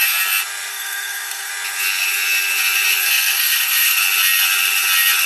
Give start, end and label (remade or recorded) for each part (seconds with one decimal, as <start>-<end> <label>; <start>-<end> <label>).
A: 0.0-0.7 recorded; 0.7-1.5 remade; 1.5-3.0 recorded; 3.0-4.0 remade; 4.0-5.3 recorded